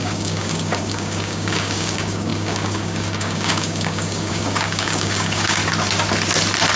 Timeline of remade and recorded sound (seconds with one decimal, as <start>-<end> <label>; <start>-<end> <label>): 0.0-5.6 remade; 5.6-6.8 recorded